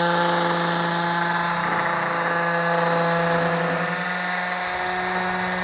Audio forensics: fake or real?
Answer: real